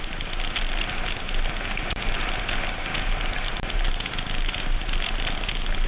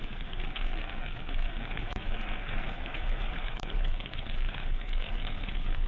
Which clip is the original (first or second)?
first